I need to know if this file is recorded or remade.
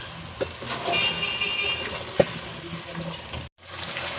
recorded